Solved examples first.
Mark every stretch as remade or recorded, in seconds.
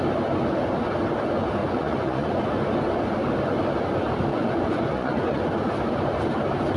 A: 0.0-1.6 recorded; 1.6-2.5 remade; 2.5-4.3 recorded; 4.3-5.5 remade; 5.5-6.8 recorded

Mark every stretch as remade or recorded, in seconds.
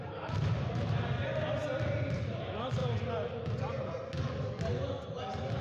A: 0.0-5.6 recorded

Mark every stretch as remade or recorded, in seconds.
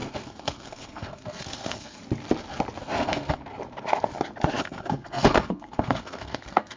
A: 0.0-2.0 remade; 2.0-2.8 recorded; 2.8-3.4 remade; 3.4-4.6 recorded; 4.6-6.8 remade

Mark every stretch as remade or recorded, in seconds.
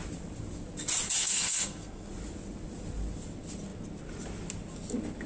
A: 0.0-1.2 recorded; 1.2-2.1 remade; 2.1-5.3 recorded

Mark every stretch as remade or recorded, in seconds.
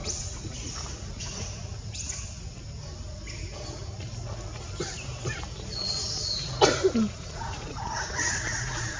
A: 0.0-2.2 remade; 2.2-7.3 recorded; 7.3-9.0 remade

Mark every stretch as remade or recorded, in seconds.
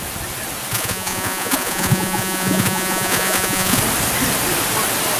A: 0.0-0.7 recorded; 0.7-3.8 remade; 3.8-5.2 recorded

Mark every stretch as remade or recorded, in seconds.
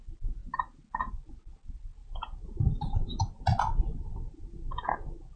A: 0.0-5.4 recorded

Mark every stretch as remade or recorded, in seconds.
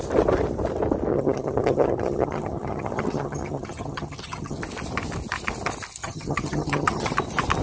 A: 0.0-1.1 recorded; 1.1-4.6 remade; 4.6-6.0 recorded; 6.0-7.1 remade; 7.1-7.6 recorded